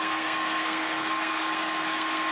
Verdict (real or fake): fake